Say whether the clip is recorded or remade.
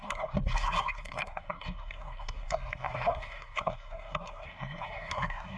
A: remade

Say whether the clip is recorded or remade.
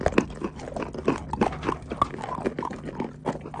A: recorded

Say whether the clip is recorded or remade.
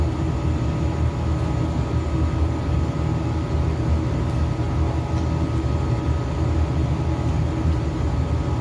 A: recorded